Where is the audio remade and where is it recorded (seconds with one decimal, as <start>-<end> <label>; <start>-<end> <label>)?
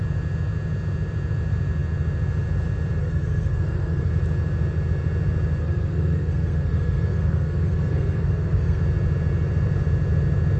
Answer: 0.0-3.0 recorded; 3.0-4.1 remade; 4.1-5.6 recorded; 5.6-8.8 remade; 8.8-10.6 recorded